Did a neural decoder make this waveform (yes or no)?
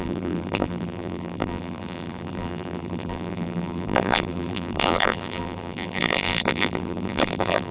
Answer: yes